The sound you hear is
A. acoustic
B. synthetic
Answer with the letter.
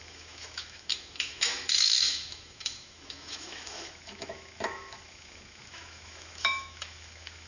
B